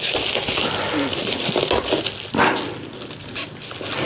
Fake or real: real